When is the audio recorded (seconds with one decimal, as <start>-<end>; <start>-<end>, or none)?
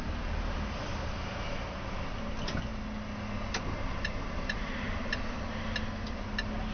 0.0-6.7